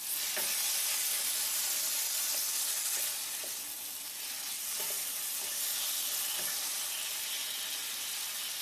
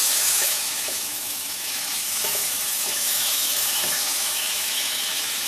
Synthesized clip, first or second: second